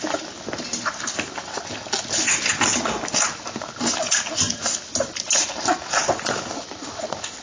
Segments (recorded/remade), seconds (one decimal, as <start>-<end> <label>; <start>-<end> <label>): 0.0-7.4 recorded

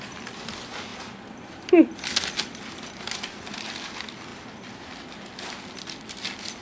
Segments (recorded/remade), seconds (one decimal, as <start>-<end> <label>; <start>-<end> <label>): 0.0-6.6 recorded

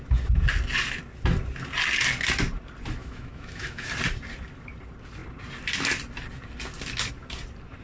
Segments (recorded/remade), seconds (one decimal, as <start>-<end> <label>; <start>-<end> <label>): 0.0-3.0 recorded; 3.0-3.9 remade; 3.9-7.8 recorded

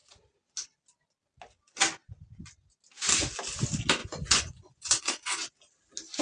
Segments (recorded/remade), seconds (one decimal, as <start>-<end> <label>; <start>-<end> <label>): 0.0-4.0 recorded; 4.0-5.5 remade; 5.5-6.2 recorded

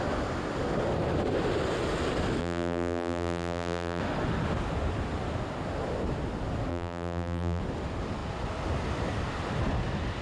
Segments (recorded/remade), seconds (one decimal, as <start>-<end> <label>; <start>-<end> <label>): 0.0-2.4 recorded; 2.4-4.0 remade; 4.0-6.7 recorded; 6.7-7.6 remade; 7.6-10.2 recorded

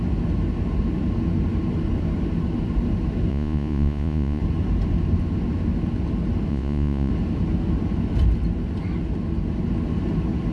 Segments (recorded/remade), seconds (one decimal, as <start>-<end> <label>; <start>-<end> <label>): 0.0-3.3 recorded; 3.3-4.4 remade; 4.4-6.5 recorded; 6.5-7.1 remade; 7.1-10.5 recorded

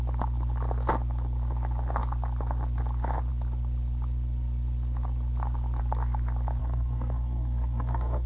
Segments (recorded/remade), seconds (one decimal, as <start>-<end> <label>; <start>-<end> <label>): 0.0-6.6 recorded; 6.6-8.3 remade